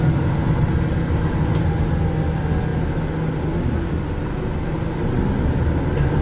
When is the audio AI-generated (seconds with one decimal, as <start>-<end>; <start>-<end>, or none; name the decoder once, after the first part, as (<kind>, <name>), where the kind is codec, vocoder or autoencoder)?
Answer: none